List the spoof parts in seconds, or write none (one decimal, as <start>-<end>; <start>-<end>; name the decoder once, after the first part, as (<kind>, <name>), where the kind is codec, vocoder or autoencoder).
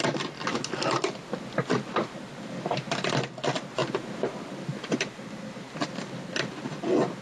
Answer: none